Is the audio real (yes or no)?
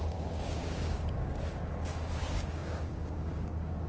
no